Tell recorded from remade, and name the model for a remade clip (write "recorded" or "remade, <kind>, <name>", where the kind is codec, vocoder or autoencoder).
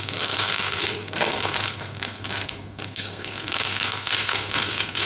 remade, codec, SNAC